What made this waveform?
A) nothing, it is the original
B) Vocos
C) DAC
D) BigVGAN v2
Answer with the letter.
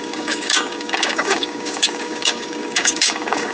C